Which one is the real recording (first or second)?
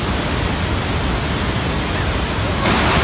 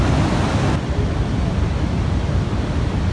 first